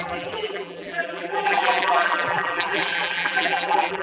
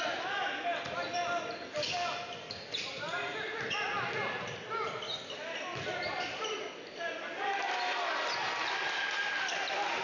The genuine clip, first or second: second